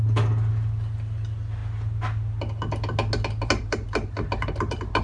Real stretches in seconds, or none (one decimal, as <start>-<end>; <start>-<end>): 0.0-5.0